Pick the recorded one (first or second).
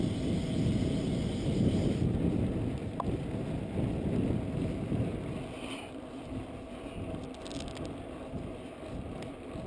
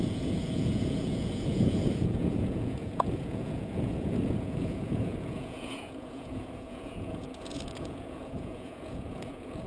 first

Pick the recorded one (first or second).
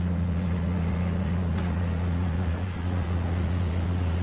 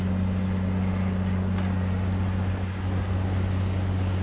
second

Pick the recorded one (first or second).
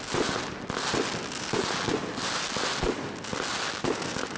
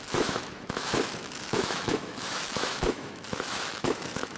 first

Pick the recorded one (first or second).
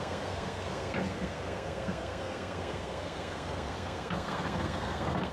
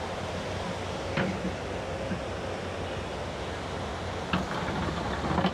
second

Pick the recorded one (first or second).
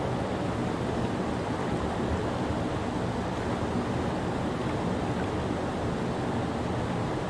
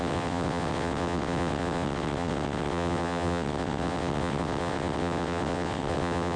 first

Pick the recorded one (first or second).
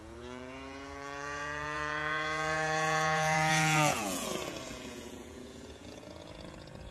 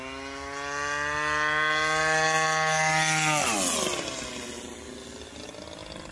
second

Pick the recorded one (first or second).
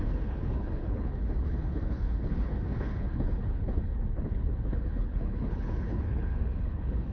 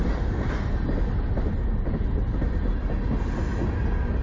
second